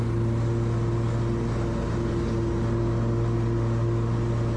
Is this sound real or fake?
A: real